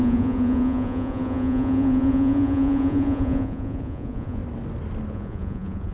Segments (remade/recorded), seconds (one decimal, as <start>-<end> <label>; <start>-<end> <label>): 0.0-4.4 remade; 4.4-5.1 recorded; 5.1-5.9 remade